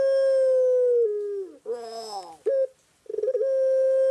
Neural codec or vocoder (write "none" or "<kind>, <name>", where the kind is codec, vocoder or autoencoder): none